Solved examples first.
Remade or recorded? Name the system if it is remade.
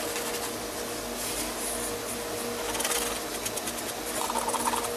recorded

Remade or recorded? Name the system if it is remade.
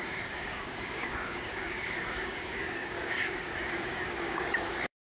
remade, codec, DAC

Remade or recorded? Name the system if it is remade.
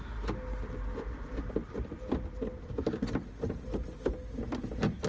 recorded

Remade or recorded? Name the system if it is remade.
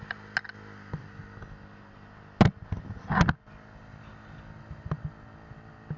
recorded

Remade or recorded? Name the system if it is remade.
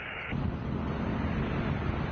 recorded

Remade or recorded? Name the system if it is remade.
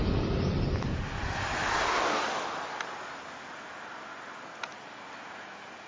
recorded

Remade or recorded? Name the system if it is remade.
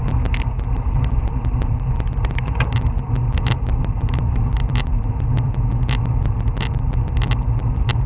recorded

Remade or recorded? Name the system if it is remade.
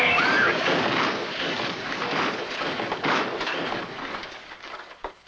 remade, codec, DAC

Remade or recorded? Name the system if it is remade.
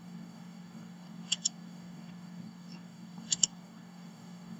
remade, codec, DAC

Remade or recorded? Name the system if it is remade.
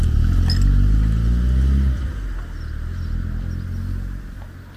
recorded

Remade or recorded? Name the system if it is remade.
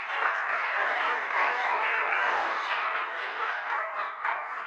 remade, codec, DAC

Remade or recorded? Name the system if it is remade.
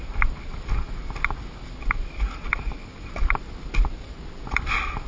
recorded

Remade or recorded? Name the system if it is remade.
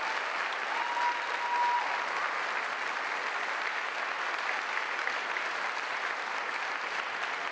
recorded